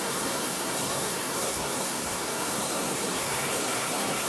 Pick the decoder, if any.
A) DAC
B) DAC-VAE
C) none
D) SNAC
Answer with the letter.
D